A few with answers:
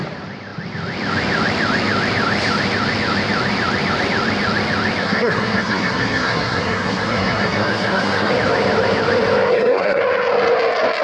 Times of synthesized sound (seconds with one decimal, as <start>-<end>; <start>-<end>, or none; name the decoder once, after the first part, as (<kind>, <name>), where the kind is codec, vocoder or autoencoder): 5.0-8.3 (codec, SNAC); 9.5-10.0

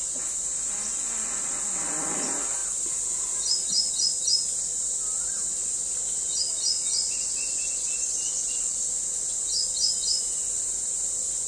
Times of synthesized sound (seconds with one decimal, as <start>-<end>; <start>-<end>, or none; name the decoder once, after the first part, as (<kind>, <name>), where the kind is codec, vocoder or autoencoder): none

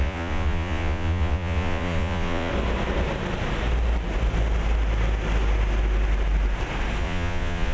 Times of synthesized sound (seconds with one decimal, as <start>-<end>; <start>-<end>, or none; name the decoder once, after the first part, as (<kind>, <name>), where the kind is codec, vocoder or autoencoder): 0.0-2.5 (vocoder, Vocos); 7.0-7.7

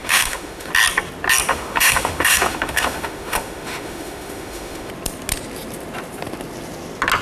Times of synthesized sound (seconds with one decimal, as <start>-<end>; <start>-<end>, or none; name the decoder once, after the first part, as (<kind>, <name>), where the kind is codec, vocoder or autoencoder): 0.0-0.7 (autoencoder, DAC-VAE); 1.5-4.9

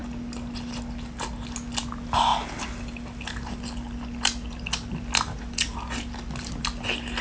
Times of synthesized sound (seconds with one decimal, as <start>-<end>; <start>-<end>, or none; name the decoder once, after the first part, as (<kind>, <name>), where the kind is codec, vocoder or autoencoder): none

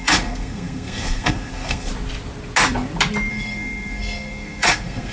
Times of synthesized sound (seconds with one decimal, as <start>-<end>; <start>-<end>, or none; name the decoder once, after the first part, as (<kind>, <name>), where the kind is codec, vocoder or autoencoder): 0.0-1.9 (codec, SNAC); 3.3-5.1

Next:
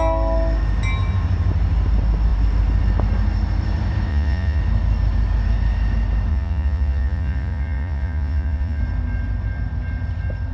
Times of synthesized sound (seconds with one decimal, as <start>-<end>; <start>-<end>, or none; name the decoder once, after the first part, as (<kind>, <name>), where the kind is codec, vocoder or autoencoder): 4.1-4.6 (vocoder, Vocos); 6.3-8.8